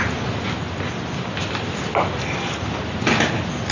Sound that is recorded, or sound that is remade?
recorded